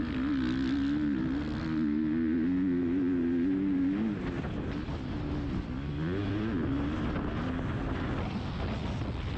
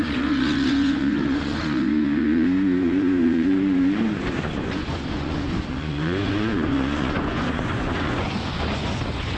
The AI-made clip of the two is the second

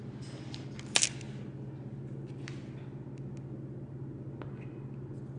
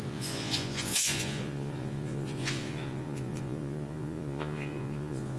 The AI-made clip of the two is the second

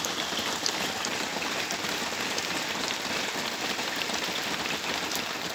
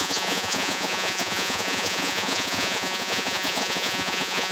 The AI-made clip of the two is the second